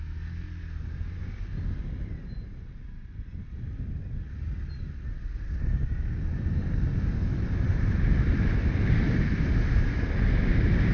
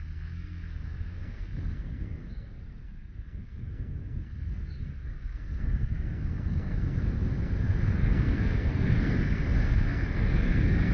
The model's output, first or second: second